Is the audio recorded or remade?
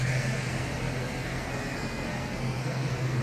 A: remade